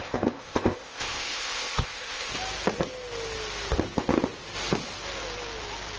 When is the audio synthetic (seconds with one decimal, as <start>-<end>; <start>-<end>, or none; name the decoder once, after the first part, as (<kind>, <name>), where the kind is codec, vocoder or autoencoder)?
0.0-2.3 (codec, ZipCodec)